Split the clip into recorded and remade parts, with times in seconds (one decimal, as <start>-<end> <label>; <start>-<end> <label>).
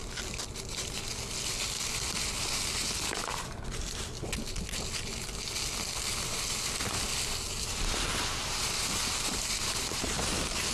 0.0-10.7 recorded